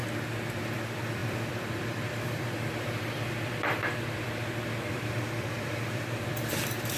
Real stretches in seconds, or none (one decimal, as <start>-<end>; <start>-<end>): 0.0-0.6

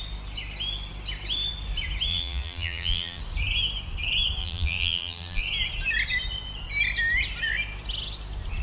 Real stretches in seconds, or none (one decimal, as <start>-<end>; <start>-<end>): 0.0-2.1; 3.2-4.4; 5.4-8.6

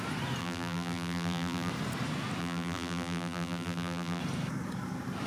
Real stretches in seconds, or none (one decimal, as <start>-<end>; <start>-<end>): 0.0-0.4; 1.7-2.4; 4.2-5.3

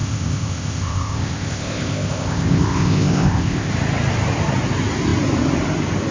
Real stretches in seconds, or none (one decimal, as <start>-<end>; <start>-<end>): 3.7-6.1

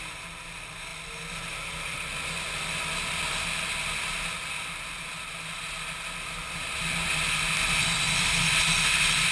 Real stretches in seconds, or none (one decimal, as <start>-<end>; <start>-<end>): 0.0-9.3